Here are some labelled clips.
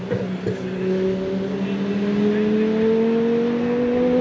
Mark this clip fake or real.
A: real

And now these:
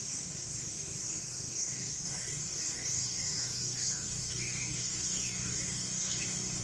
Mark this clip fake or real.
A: fake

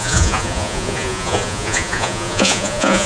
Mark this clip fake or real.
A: fake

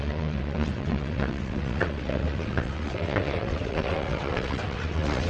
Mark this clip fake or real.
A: fake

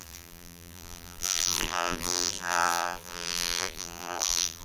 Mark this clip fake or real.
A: fake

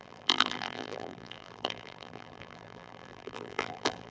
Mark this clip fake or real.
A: fake